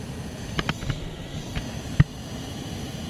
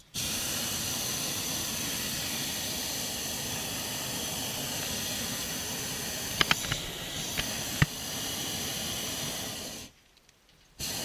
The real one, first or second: first